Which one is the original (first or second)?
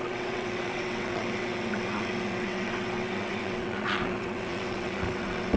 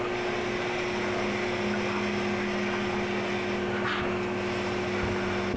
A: second